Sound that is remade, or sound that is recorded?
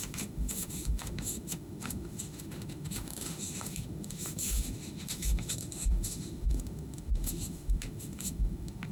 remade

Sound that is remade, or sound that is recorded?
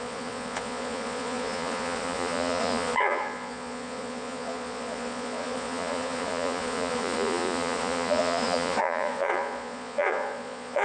remade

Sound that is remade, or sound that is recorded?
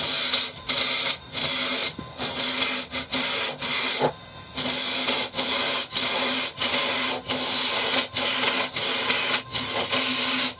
recorded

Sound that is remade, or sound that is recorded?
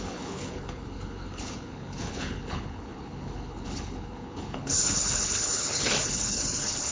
remade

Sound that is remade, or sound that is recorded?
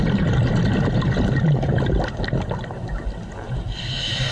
recorded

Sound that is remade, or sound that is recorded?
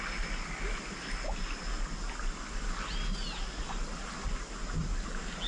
recorded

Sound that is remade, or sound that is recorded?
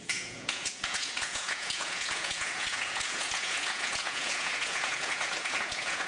remade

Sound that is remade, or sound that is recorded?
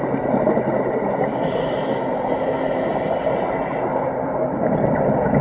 recorded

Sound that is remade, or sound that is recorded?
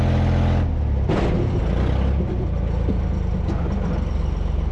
recorded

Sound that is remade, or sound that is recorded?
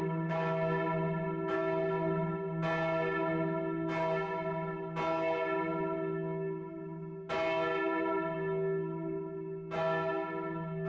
recorded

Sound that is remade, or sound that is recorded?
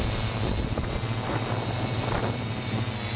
recorded